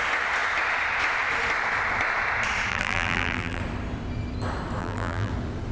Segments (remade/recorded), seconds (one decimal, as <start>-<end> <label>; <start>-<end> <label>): 0.0-2.7 recorded; 2.7-3.6 remade; 3.6-4.8 recorded; 4.8-5.3 remade; 5.3-5.7 recorded